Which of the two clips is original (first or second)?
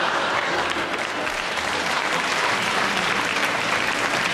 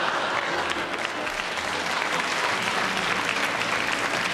second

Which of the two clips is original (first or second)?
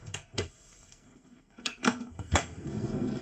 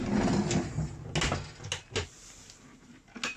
second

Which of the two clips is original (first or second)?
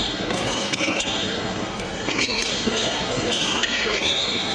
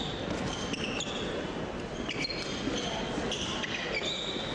second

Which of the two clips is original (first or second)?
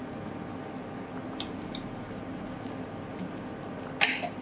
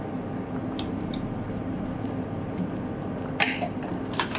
first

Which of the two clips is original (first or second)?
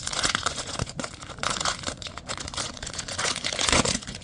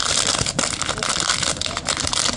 second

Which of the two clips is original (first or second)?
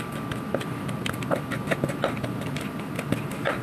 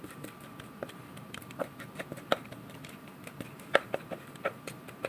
first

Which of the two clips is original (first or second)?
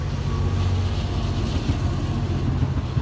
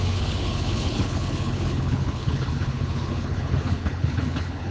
first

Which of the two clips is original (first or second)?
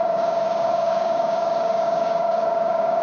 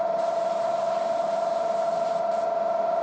second